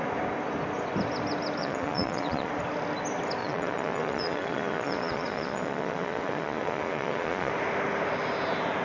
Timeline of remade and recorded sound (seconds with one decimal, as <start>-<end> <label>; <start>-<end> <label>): 0.0-1.6 recorded; 1.6-2.5 remade; 2.5-3.4 recorded; 3.4-7.5 remade; 7.5-8.8 recorded